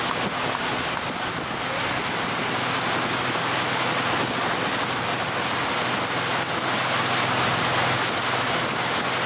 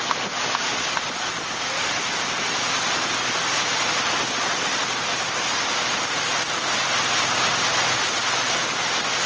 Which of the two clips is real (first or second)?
first